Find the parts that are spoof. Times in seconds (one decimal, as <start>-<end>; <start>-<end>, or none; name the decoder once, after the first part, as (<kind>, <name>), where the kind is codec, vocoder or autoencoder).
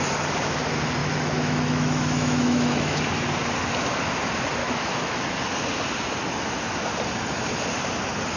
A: 1.0-3.0 (autoencoder, DAC-VAE); 4.6-5.2